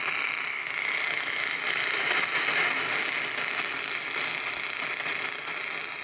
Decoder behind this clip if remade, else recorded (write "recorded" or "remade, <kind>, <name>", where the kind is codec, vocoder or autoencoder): recorded